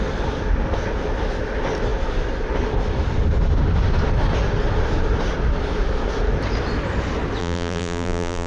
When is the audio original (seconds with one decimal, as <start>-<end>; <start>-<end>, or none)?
0.0-7.4